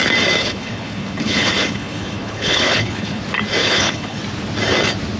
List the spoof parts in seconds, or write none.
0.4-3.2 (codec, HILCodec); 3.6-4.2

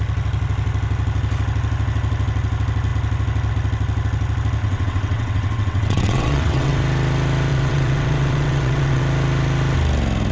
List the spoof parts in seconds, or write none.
4.6-6.7 (vocoder, WaveNeXt); 7.5-9.0

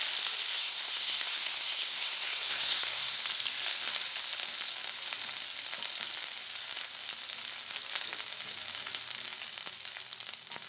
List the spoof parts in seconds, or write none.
0.5-3.2 (codec, SNAC)

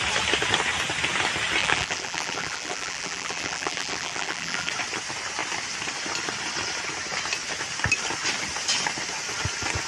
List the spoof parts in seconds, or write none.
1.6-4.7 (vocoder, BigVGAN v2)